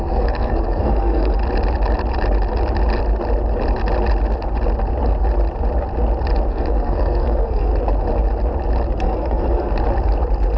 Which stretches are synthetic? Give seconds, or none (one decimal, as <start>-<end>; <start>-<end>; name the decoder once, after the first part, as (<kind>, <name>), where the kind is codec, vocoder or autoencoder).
0.0-1.4 (codec, SNAC); 6.5-7.7; 9.0-9.7